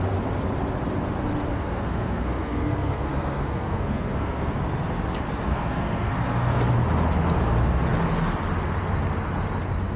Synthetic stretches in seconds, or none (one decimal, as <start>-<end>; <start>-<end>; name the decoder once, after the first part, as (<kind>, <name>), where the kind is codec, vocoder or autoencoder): 1.5-4.5 (codec, SNAC); 5.5-6.7